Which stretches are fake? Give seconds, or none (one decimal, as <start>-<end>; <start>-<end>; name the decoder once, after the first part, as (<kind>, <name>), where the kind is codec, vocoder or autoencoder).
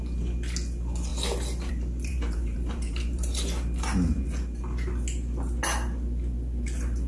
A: 2.1-3.4 (vocoder, BigVGAN v2)